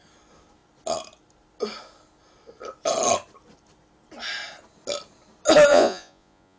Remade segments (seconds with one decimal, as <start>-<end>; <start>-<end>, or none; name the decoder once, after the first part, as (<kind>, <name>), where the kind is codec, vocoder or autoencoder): 5.7-6.6 (vocoder, Vocos)

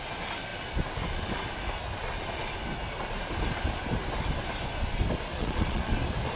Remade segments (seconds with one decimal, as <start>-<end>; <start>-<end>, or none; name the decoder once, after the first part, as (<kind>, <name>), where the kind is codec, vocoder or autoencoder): 5.3-5.9 (vocoder, Vocos)